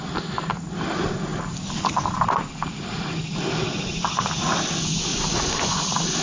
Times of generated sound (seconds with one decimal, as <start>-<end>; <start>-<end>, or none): 5.1-5.8